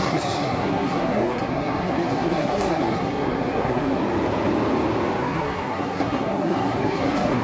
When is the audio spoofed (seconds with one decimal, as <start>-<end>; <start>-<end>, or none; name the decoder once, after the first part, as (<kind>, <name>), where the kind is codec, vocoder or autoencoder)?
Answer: 0.0-4.0 (codec, SNAC); 5.2-7.4